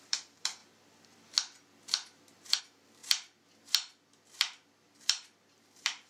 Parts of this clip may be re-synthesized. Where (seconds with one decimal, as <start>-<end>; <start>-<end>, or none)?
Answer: 0.0-0.6; 2.6-3.0; 5.5-6.1